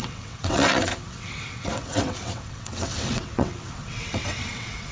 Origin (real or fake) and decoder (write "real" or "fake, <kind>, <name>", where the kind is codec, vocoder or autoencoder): fake, vocoder, WaveNeXt